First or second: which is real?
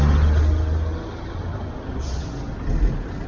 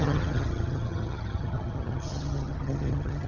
first